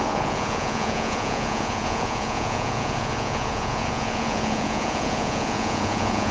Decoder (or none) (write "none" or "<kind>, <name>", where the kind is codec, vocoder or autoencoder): vocoder, Vocos